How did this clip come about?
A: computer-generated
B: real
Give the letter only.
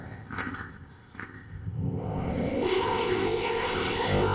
A